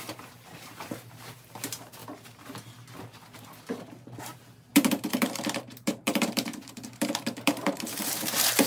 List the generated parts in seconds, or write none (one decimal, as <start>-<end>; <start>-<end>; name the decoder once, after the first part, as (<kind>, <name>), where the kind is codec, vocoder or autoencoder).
0.0-2.0 (vocoder, BigVGAN v2); 4.2-8.7